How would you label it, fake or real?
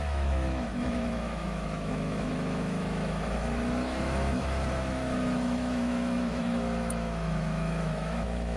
fake